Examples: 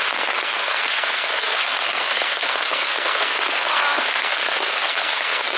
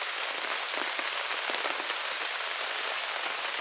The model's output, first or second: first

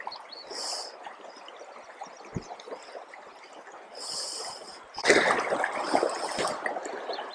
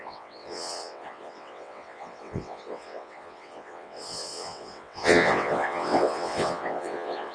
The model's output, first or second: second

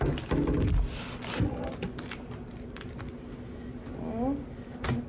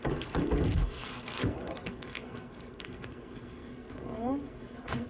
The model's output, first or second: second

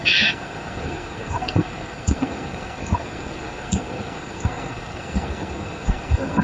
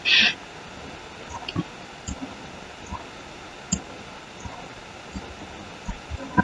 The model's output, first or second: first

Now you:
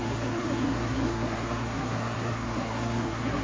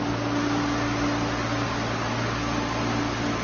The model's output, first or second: first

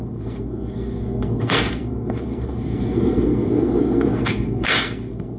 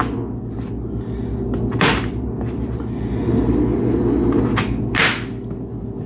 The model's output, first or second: first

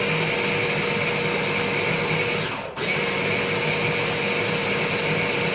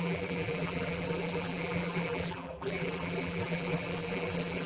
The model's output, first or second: second